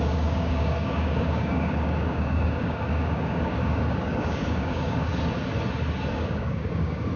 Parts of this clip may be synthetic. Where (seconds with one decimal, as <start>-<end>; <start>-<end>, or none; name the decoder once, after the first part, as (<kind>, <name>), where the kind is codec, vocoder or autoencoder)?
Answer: 0.0-5.1 (codec, DAC); 6.1-7.2